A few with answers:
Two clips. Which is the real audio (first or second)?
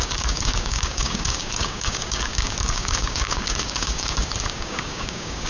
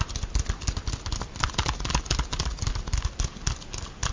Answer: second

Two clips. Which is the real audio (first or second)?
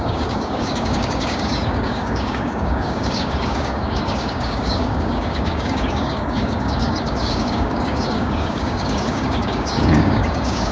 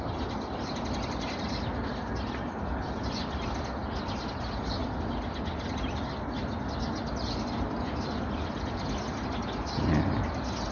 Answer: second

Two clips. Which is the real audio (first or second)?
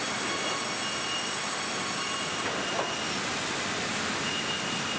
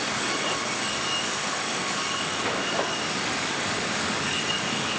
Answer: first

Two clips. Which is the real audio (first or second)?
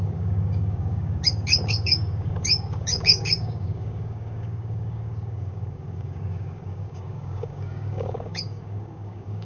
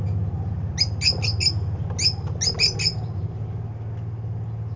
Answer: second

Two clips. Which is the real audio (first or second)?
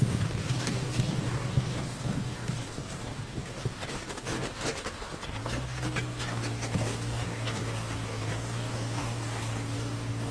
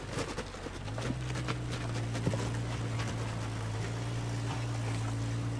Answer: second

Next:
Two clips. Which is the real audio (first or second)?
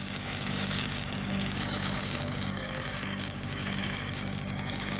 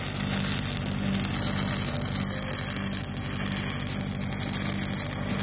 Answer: second